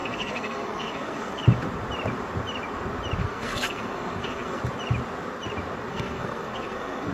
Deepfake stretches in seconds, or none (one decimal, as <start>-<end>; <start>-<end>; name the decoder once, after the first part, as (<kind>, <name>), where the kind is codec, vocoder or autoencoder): 0.0-1.4 (codec, SNAC); 3.2-4.6; 5.9-7.1